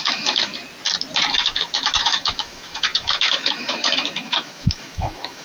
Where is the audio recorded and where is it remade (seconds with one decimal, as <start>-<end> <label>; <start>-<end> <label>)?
0.0-0.5 remade; 0.5-1.4 recorded; 1.4-5.4 remade